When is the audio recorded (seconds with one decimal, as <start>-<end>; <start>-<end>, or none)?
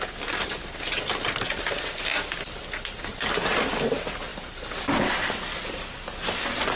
0.0-6.8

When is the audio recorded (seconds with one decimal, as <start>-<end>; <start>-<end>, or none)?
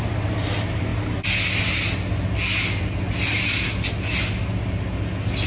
0.0-5.5